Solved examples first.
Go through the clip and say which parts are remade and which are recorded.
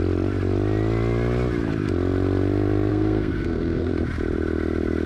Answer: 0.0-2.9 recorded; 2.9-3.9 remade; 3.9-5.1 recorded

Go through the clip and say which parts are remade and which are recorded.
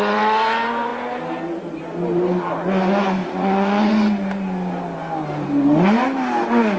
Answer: 0.0-3.2 recorded; 3.2-3.9 remade; 3.9-6.8 recorded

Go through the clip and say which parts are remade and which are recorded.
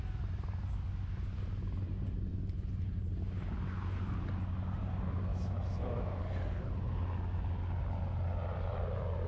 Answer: 0.0-5.3 recorded; 5.3-6.2 remade; 6.2-9.3 recorded